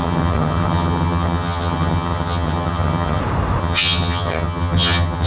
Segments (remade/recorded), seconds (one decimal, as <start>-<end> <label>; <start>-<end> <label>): 0.0-3.2 remade; 3.2-3.6 recorded; 3.6-5.3 remade